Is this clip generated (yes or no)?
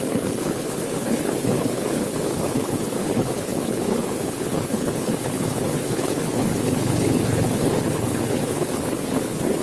yes